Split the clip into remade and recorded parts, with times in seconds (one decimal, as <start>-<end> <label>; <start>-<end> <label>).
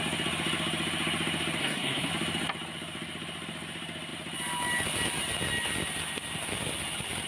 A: 0.0-1.6 recorded; 1.6-2.1 remade; 2.1-7.3 recorded